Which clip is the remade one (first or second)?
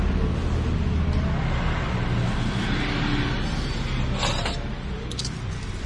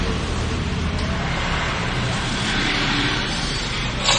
second